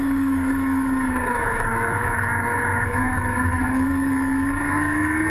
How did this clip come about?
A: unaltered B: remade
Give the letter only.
B